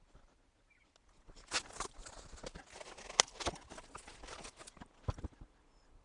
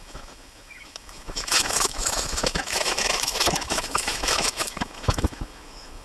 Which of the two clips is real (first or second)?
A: first